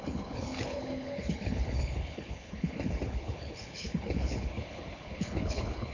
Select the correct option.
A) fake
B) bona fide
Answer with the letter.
A